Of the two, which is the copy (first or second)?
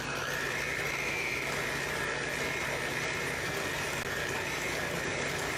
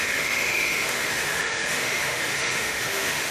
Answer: second